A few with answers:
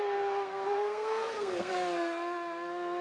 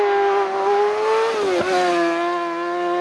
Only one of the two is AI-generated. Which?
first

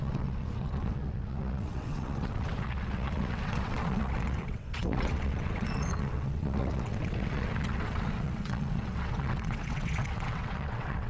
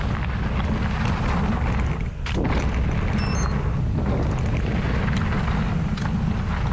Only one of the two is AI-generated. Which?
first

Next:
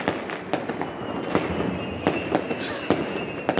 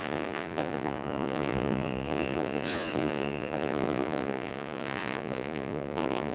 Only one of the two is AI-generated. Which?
second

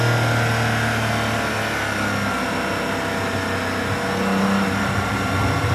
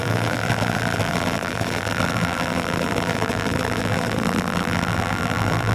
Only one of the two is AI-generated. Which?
second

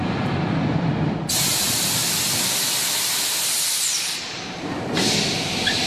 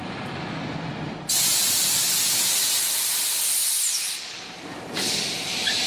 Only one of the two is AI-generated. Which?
first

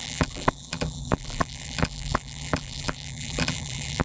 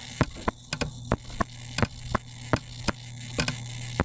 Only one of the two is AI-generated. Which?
first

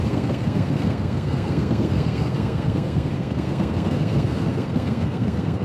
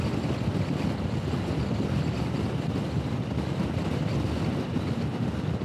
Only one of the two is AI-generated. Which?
first